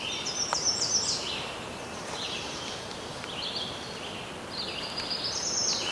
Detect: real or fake fake